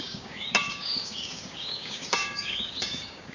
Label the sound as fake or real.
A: fake